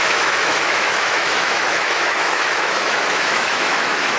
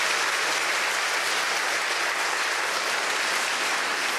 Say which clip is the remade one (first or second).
first